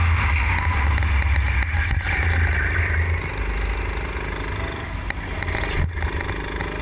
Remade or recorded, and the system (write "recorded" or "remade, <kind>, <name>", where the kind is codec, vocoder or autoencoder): recorded